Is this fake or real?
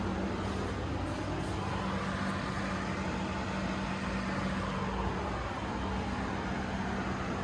real